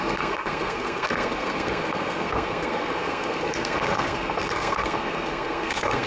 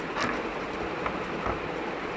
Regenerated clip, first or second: first